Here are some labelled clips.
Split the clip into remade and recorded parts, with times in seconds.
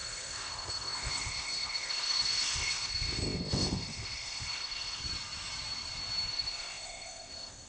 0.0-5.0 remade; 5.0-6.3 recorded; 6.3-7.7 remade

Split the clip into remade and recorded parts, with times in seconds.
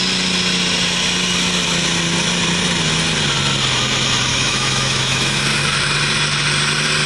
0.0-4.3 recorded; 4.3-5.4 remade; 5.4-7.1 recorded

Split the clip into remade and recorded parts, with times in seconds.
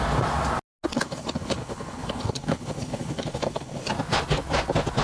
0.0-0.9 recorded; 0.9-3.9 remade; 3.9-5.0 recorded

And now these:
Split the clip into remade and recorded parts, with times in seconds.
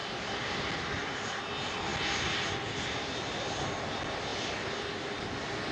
0.0-5.7 recorded